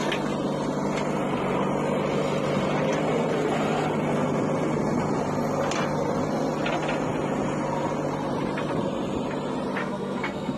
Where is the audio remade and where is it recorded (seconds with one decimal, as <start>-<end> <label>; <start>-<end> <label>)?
0.0-9.8 recorded; 9.8-10.6 remade